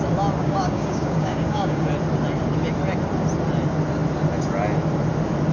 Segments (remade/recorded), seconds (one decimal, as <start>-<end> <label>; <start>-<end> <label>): 0.0-0.4 recorded; 0.4-1.9 remade; 1.9-5.5 recorded